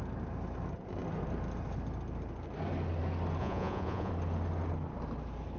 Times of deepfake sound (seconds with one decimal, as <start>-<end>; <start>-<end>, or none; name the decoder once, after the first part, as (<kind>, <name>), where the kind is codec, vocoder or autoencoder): 3.4-4.1 (vocoder, Vocos)